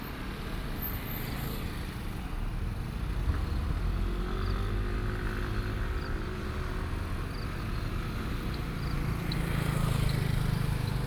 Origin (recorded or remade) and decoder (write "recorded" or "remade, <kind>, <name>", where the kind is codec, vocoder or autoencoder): recorded